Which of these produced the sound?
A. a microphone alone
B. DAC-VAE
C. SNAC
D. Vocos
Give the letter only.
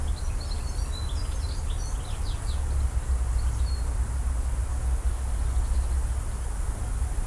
A